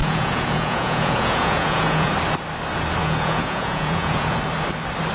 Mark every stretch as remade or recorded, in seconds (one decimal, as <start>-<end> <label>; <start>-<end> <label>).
0.0-2.1 remade; 2.1-3.0 recorded; 3.0-4.3 remade; 4.3-5.1 recorded